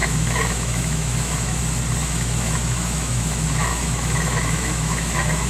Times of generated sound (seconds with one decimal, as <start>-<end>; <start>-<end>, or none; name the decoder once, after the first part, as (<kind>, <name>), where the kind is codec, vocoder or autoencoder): 0.0-1.6 (autoencoder, DAC-VAE); 2.0-5.5